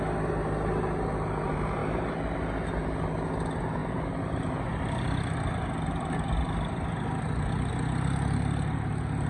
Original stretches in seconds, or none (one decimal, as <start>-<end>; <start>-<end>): 0.0-9.3